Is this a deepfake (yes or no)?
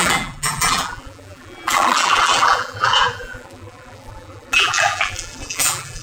yes